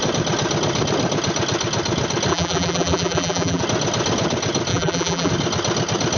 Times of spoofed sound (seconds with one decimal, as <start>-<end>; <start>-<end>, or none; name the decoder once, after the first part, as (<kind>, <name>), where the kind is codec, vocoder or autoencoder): 2.3-3.6 (vocoder, BigVGAN v2); 4.7-5.3